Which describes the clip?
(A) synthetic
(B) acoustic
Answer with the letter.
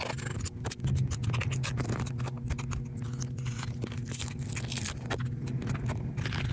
B